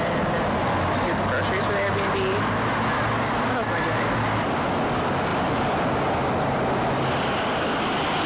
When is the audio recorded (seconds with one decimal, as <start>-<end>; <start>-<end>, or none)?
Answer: 0.0-8.3